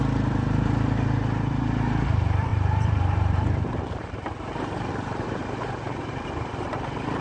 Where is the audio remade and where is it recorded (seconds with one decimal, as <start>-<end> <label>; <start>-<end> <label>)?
0.0-5.4 remade; 5.4-6.1 recorded; 6.1-7.2 remade